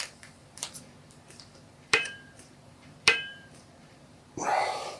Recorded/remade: remade